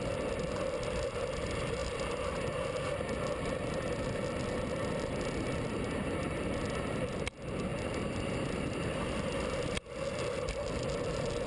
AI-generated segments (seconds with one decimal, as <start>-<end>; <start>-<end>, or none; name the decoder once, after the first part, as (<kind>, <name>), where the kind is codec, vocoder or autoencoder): none